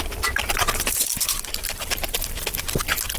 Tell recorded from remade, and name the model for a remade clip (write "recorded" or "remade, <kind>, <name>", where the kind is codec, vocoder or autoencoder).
recorded